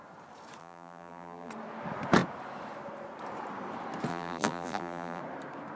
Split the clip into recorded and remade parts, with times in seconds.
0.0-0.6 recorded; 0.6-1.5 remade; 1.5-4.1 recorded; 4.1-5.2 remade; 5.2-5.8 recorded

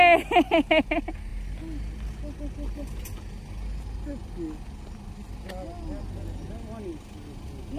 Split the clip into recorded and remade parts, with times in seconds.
0.0-7.8 recorded

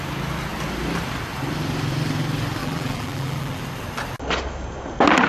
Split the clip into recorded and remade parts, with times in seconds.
0.0-2.6 recorded; 2.6-3.6 remade; 3.6-5.3 recorded

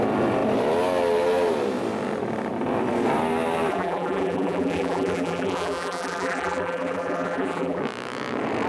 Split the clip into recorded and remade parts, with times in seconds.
0.0-3.7 recorded; 3.7-7.8 remade; 7.8-8.7 recorded

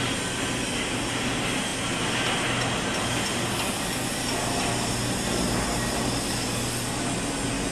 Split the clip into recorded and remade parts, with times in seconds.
0.0-7.7 recorded